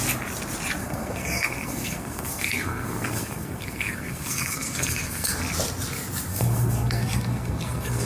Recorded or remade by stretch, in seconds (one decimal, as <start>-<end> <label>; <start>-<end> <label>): 0.0-0.8 recorded; 0.8-5.4 remade; 5.4-6.3 recorded; 6.3-8.1 remade